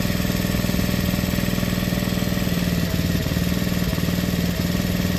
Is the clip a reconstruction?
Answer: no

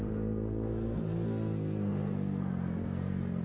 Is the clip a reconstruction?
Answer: yes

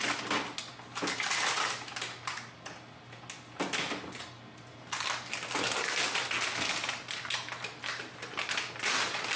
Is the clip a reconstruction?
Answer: no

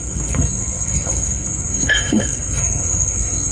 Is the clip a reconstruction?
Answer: yes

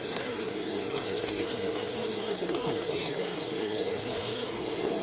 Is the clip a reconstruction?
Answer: yes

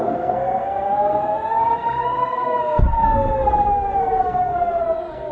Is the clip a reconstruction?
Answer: yes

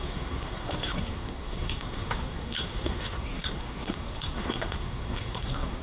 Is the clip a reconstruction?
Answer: yes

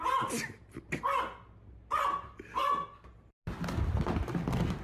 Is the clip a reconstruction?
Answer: no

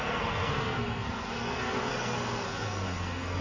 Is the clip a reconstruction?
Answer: yes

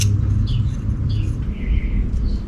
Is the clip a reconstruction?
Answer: no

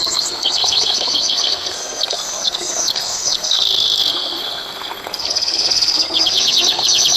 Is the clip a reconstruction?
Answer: yes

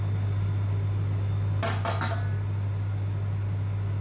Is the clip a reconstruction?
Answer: no